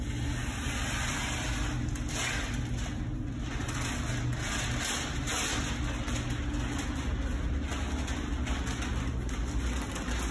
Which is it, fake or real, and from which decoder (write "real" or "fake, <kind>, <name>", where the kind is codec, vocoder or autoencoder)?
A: real